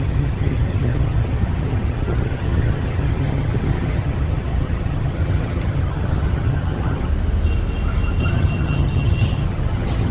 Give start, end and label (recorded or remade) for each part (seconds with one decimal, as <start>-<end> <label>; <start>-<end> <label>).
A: 0.0-7.1 remade; 7.1-8.2 recorded; 8.2-10.1 remade